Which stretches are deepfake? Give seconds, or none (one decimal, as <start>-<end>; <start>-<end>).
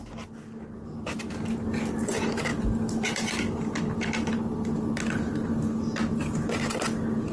none